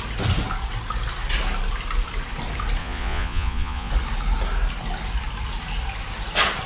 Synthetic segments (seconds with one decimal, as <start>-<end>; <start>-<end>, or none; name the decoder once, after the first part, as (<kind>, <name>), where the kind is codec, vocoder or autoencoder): 2.8-3.9 (vocoder, Vocos)